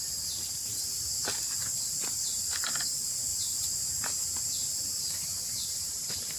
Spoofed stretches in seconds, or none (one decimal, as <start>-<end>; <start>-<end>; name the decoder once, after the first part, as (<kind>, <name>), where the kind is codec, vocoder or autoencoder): 3.3-4.7 (vocoder, BigVGAN v2); 5.3-6.4